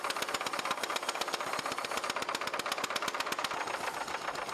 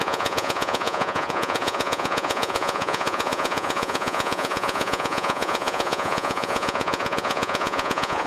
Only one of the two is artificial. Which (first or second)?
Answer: second